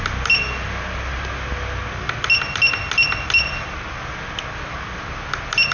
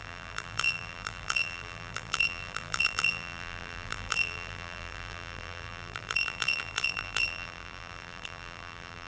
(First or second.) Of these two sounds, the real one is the first